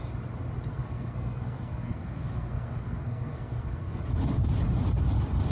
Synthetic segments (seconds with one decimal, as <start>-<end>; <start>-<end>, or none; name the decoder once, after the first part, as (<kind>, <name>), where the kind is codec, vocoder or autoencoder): 0.7-4.0 (codec, SNAC)